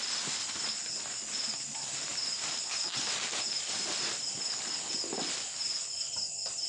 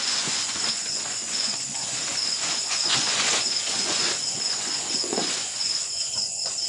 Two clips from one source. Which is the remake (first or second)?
second